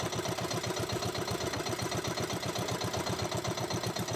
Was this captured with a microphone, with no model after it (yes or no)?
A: yes